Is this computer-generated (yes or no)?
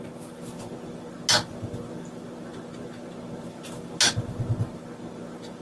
no